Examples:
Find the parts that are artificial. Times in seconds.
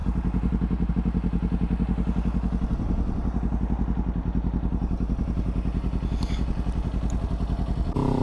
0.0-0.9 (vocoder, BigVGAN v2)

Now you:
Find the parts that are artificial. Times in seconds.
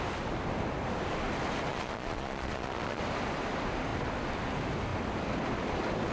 1.7-3.0 (vocoder, Vocos)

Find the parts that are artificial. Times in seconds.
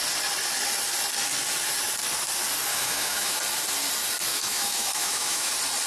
2.7-3.4 (autoencoder, DAC-VAE); 4.3-5.5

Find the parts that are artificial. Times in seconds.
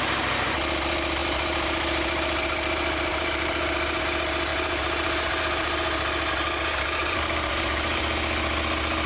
1.2-4.0 (vocoder, BigVGAN v2); 4.5-6.3; 7.0-8.0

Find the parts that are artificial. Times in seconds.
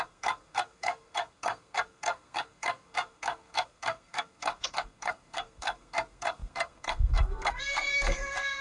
0.0-8.6 (codec, SNAC)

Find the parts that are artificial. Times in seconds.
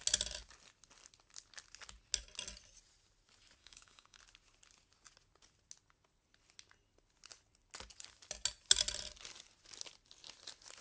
3.6-4.2 (codec, DAC)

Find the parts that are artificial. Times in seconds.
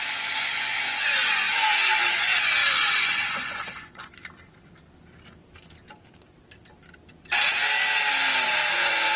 0.0-4.2 (vocoder, Vocos); 8.7-9.2